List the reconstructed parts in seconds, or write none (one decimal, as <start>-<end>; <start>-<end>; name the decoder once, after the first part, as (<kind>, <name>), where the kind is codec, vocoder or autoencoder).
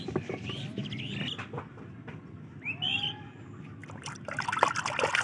none